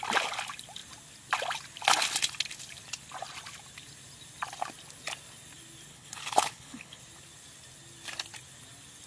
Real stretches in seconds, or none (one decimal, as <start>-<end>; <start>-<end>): 0.0-5.9; 7.0-9.1